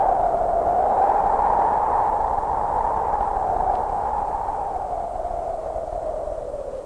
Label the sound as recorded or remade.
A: recorded